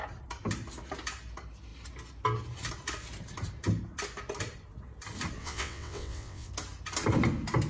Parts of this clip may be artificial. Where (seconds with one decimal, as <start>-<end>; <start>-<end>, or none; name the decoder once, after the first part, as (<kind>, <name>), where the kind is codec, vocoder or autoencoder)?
5.4-6.5 (vocoder, WaveNeXt)